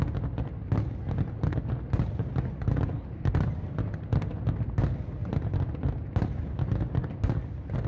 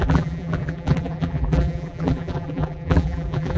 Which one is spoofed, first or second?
second